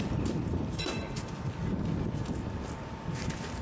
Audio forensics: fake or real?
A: real